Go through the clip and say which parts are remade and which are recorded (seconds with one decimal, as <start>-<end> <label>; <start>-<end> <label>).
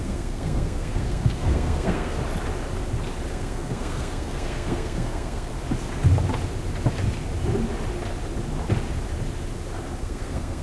0.0-2.2 remade; 2.2-3.3 recorded; 3.3-5.5 remade; 5.5-10.0 recorded; 10.0-10.6 remade